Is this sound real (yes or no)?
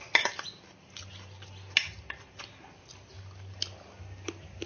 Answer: yes